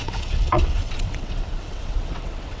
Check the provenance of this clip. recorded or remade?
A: remade